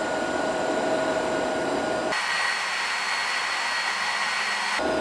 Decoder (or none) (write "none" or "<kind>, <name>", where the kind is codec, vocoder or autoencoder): none